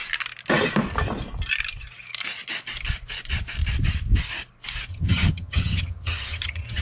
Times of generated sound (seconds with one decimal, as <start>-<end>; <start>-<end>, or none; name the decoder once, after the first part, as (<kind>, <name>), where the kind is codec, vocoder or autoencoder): 4.9-6.8 (vocoder, HiFi-GAN)